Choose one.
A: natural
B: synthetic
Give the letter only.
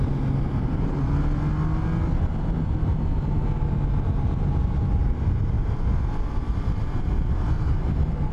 A